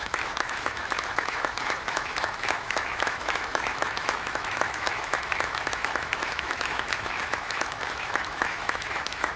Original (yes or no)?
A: no